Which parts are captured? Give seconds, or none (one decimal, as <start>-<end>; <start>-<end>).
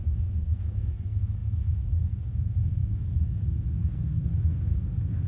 none